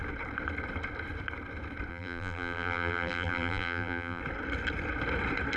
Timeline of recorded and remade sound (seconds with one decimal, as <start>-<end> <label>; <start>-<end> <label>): 0.0-1.9 recorded; 1.9-4.2 remade; 4.2-5.6 recorded